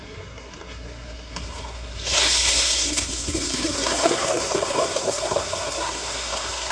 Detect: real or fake fake